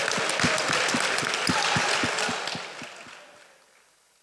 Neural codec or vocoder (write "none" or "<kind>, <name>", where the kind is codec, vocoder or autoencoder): none